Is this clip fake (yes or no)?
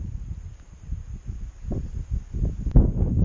no